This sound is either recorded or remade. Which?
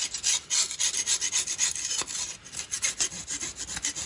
recorded